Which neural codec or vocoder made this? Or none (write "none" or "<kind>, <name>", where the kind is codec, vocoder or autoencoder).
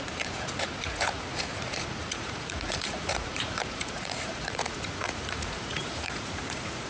vocoder, Vocos